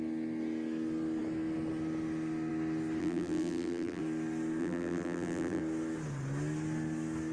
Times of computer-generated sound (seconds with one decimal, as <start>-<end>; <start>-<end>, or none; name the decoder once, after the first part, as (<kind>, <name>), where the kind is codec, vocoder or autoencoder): 3.0-4.0 (vocoder, BigVGAN v2); 4.6-5.6